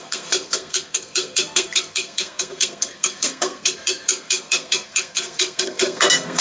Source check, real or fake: fake